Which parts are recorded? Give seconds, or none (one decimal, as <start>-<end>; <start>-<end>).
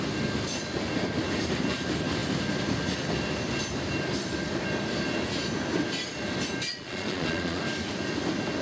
0.0-6.7; 7.6-8.6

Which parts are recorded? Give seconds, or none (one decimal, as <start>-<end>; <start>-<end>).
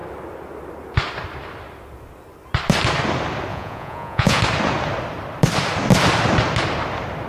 0.0-3.5; 4.4-7.3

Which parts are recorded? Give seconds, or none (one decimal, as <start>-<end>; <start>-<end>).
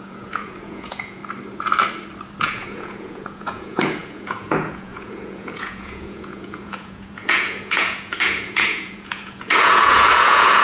1.2-2.4